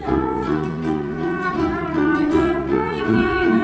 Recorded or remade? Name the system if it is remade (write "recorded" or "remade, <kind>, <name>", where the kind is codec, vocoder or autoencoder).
remade, vocoder, Vocos